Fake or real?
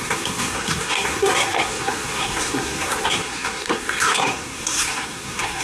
fake